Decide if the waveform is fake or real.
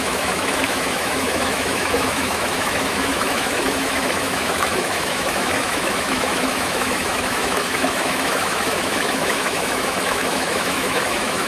fake